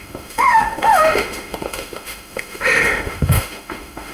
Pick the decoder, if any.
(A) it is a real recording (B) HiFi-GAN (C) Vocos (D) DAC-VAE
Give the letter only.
D